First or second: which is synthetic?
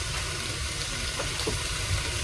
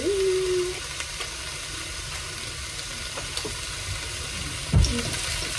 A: first